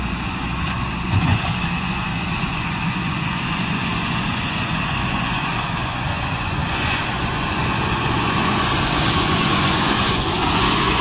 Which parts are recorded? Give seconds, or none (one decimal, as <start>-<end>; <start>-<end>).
none